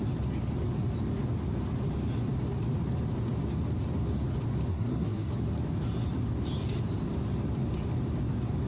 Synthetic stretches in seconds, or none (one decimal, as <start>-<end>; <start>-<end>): 4.7-5.3

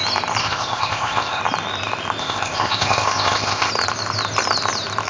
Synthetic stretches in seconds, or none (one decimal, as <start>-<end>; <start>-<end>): 0.4-1.4; 2.2-3.7